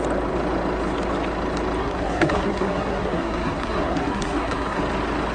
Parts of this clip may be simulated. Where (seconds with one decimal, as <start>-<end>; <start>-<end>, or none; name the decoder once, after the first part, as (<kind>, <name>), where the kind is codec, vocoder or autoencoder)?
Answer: 1.8-4.8 (codec, SNAC)